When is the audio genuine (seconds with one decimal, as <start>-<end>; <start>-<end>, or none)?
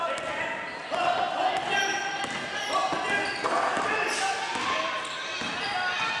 0.0-6.2